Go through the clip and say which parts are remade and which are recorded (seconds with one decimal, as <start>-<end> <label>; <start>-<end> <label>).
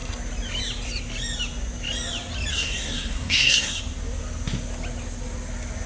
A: 0.0-2.5 recorded; 2.5-3.8 remade; 3.8-5.9 recorded